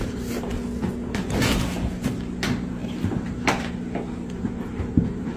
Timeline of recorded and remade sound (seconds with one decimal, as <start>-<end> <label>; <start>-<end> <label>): 0.0-2.8 recorded; 2.8-3.7 remade; 3.7-4.4 recorded; 4.4-4.9 remade; 4.9-5.4 recorded